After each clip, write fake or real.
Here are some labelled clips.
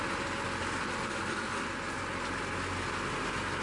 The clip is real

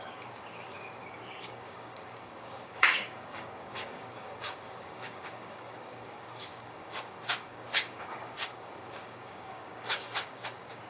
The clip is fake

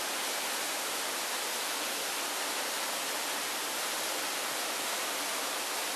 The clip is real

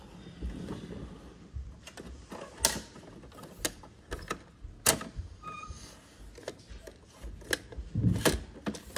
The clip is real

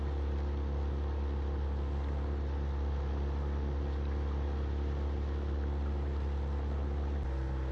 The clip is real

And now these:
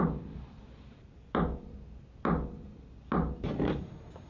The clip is real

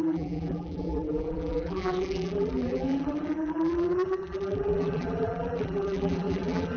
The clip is fake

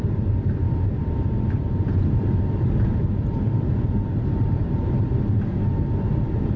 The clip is fake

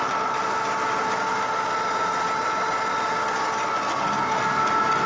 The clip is real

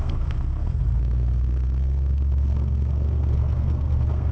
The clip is fake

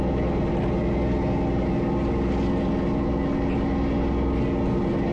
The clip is real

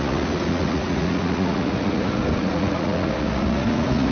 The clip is fake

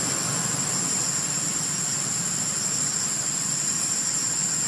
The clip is real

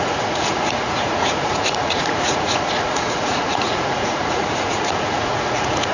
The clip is fake